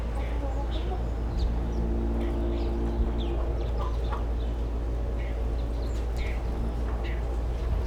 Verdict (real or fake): real